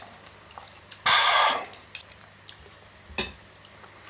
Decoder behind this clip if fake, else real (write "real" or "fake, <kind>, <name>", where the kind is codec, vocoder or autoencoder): real